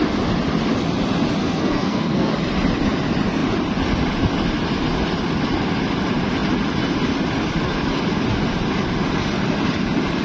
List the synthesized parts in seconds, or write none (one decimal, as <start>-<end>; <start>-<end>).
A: 1.4-2.3